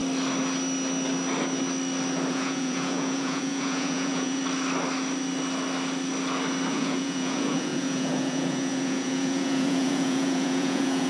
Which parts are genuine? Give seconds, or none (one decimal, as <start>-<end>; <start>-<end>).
0.0-2.3; 4.4-6.7